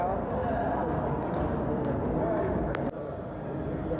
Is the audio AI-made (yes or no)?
no